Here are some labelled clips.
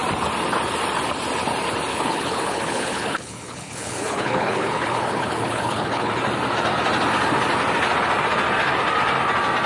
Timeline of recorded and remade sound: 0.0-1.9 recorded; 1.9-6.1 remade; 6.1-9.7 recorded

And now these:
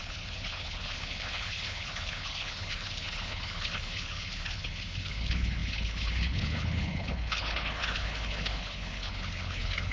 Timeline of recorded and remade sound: 0.0-9.9 remade

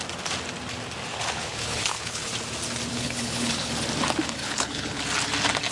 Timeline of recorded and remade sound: 0.0-1.1 recorded; 1.1-2.3 remade; 2.3-2.9 recorded; 2.9-3.7 remade; 3.7-4.4 recorded; 4.4-5.0 remade; 5.0-5.7 recorded

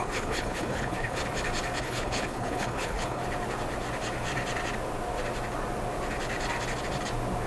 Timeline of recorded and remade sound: 0.0-1.2 remade; 1.2-1.8 recorded; 1.8-3.2 remade; 3.2-7.5 recorded